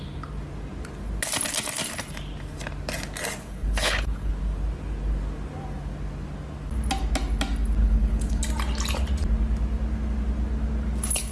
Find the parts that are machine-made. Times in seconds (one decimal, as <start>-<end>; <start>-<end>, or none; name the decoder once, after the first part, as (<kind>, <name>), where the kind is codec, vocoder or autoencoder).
3.4-4.3 (codec, HILCodec); 7.8-8.4